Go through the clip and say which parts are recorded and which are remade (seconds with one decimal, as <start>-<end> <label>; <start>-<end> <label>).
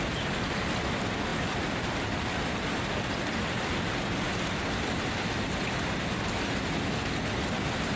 0.0-8.0 recorded